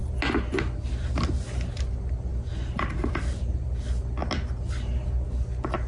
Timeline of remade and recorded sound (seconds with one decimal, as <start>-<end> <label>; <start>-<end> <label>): 0.0-2.3 recorded; 2.3-3.6 remade; 3.6-5.9 recorded